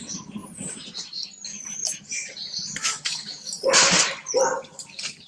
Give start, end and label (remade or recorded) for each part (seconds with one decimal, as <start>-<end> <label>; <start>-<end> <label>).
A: 0.0-1.5 recorded; 1.5-2.0 remade; 2.0-2.8 recorded; 2.8-3.5 remade; 3.5-5.3 recorded